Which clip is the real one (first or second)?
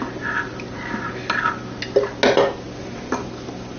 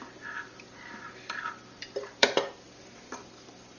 first